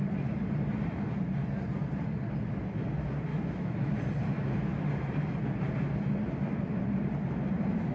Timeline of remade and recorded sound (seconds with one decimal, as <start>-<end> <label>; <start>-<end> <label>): 0.0-3.3 recorded; 3.3-4.0 remade; 4.0-7.9 recorded